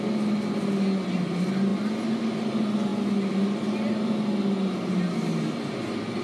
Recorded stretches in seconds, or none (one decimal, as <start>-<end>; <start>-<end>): 0.0-6.2